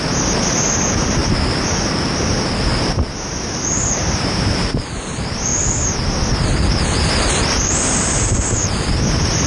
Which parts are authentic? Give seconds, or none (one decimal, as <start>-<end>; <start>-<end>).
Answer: 1.2-4.1; 5.5-7.1